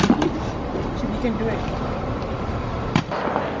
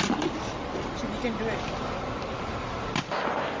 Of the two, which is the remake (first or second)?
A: first